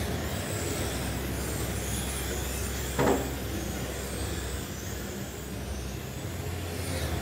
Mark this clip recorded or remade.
recorded